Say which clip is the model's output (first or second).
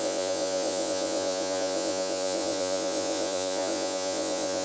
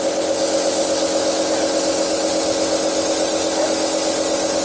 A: first